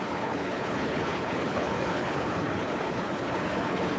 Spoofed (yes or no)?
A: yes